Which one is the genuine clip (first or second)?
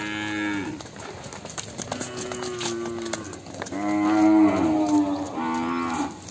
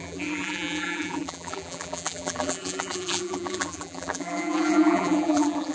first